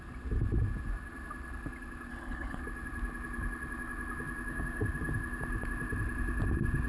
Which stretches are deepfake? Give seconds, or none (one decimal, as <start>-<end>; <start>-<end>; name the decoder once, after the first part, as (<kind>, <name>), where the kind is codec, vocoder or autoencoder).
2.1-2.6 (codec, HILCodec)